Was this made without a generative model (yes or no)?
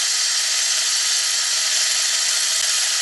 yes